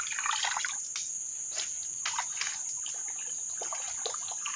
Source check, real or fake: real